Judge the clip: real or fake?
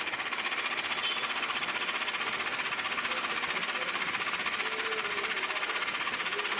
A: real